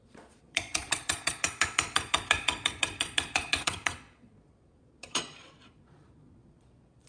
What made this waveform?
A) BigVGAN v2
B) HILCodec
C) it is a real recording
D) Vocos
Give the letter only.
D